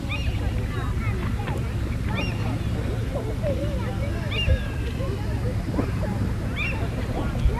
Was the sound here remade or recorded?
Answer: recorded